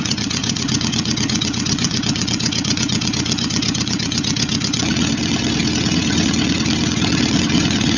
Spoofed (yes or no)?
yes